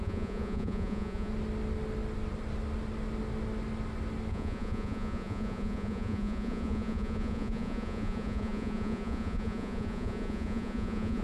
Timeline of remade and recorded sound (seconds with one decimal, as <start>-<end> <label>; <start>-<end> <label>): 0.0-1.3 remade; 1.3-4.3 recorded; 4.3-11.2 remade